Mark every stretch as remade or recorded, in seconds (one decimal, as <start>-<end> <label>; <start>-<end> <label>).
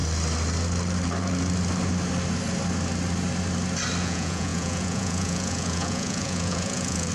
0.0-4.0 recorded; 4.0-7.1 remade